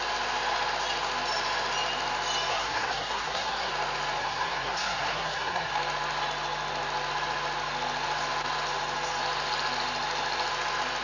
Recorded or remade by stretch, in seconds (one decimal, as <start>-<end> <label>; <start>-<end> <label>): 0.0-2.5 recorded; 2.5-3.7 remade; 3.7-4.2 recorded; 4.2-5.7 remade; 5.7-11.0 recorded